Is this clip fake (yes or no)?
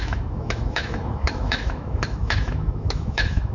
yes